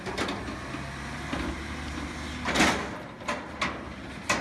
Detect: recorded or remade recorded